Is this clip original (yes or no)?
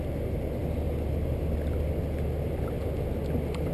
yes